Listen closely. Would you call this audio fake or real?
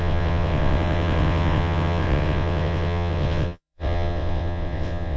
fake